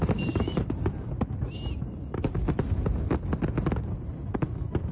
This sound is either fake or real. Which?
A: real